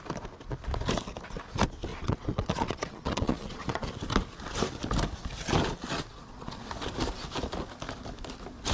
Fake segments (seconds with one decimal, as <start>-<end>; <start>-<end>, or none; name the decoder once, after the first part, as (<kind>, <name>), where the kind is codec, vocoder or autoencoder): 1.9-3.9 (vocoder, Vocos); 6.1-6.7